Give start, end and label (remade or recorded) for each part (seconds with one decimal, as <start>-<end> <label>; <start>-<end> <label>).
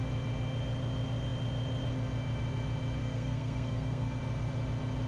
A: 0.0-3.0 recorded; 3.0-4.2 remade; 4.2-5.1 recorded